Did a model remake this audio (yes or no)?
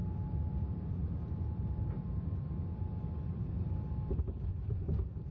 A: no